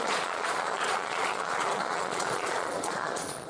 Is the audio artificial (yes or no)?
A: yes